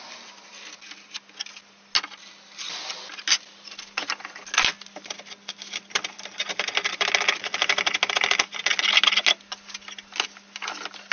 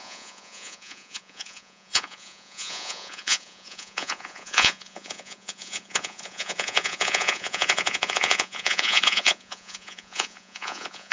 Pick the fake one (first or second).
second